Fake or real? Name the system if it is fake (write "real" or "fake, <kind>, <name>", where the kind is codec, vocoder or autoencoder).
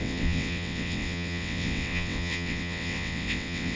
fake, vocoder, WaveNeXt